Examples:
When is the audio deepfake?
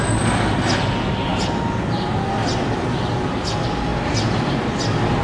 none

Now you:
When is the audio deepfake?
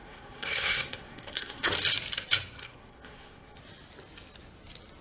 0.0-1.7 (codec, SNAC); 2.6-3.6